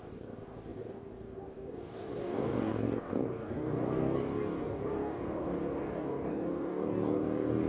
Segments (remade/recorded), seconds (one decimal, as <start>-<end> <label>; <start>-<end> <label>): 0.0-7.7 remade